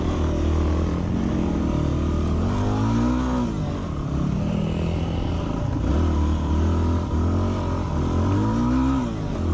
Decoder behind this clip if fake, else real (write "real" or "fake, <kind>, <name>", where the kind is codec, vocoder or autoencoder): real